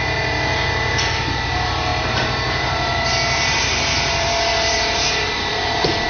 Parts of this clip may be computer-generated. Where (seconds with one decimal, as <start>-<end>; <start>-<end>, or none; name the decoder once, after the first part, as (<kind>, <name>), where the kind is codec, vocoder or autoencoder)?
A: 0.0-6.1 (vocoder, BigVGAN v2)